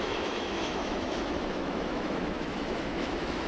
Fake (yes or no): yes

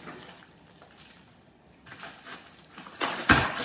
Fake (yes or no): no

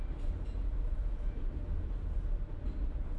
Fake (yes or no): no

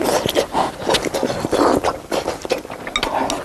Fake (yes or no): no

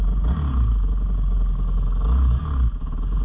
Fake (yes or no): no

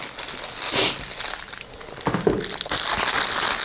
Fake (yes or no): yes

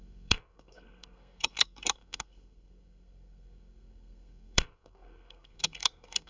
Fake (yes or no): yes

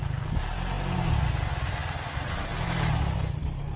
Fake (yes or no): no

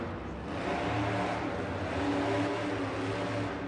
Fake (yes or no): no